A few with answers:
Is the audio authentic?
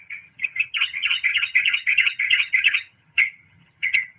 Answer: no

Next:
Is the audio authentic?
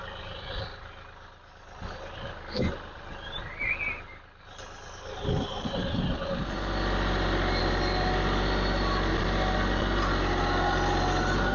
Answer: yes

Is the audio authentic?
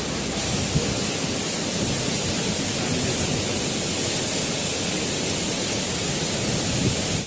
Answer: yes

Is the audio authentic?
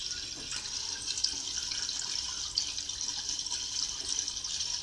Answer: yes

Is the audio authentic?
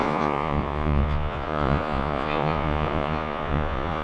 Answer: no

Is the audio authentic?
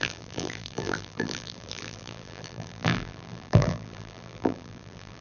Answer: no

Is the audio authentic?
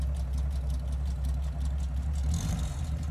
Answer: yes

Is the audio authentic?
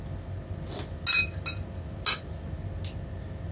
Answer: yes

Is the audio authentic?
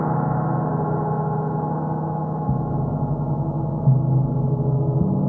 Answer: no